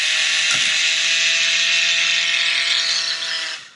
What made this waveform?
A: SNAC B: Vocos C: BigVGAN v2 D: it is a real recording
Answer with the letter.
D